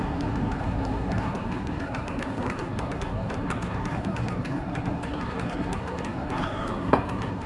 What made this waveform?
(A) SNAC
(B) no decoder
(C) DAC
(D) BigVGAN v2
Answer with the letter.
A